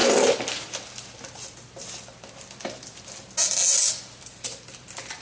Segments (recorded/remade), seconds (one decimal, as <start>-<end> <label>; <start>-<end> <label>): 0.0-5.2 recorded